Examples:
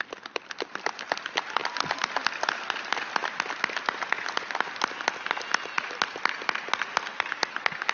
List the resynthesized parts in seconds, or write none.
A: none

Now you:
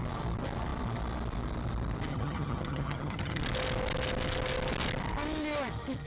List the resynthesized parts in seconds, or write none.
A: 2.1-3.4 (vocoder, HiFi-GAN)

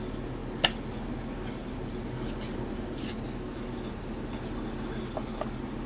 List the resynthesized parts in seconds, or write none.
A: none

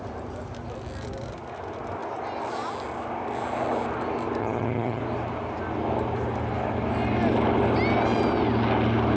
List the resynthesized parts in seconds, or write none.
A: 4.4-5.0 (vocoder, HiFi-GAN)